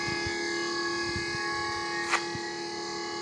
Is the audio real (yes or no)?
yes